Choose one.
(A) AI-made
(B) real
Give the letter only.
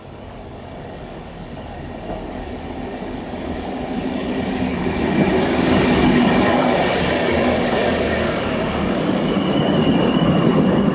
A